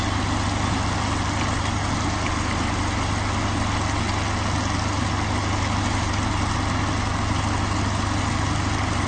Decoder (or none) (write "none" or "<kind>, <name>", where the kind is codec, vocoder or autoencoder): none